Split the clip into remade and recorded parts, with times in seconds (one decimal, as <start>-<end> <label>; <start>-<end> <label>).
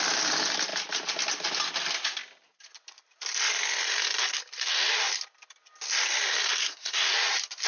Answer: 0.0-6.6 recorded; 6.6-7.1 remade; 7.1-7.7 recorded